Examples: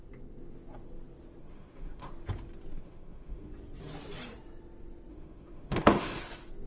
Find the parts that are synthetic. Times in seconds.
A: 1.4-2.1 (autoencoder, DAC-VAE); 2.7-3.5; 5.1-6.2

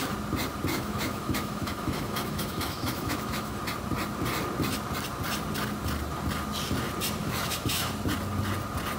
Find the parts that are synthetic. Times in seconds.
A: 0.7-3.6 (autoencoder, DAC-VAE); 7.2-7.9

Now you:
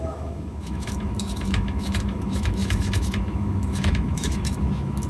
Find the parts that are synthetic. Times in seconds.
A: 0.0-5.1 (autoencoder, DAC-VAE)

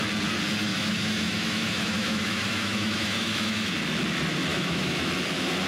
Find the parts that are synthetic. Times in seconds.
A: 0.7-3.8 (autoencoder, DAC-VAE); 4.5-5.1